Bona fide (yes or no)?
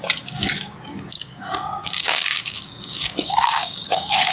no